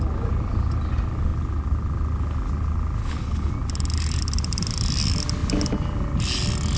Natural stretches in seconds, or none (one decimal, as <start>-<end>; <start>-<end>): 0.0-3.0; 3.5-6.8